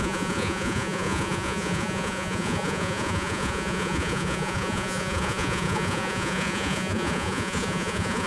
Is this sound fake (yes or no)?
yes